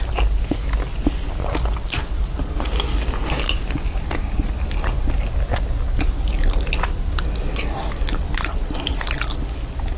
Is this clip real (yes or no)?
yes